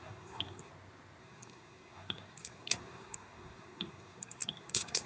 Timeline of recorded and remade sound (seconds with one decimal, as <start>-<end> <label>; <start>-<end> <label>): 0.0-0.7 remade; 0.7-1.2 recorded; 1.2-5.1 remade